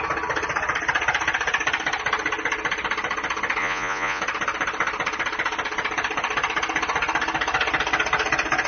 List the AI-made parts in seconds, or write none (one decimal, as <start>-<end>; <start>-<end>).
3.6-4.2